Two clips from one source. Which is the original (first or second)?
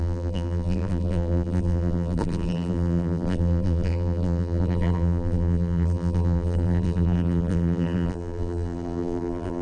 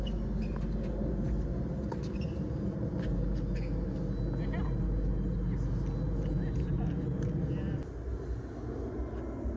second